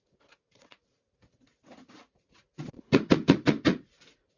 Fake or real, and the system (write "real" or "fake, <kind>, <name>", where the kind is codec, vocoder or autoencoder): fake, vocoder, Vocos